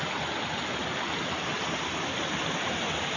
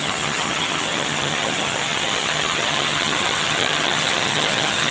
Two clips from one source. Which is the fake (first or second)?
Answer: second